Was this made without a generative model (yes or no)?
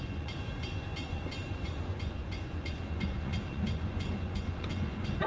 no